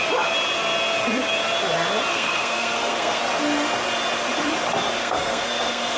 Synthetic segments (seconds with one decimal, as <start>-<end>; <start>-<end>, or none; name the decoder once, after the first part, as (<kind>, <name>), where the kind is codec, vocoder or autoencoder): 2.1-3.2 (codec, SNAC); 5.0-6.0